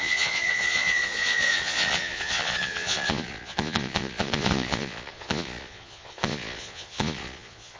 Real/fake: fake